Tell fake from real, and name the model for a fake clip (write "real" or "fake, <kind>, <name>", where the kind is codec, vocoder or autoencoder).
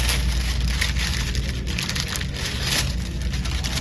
real